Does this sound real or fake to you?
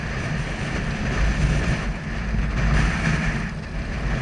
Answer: real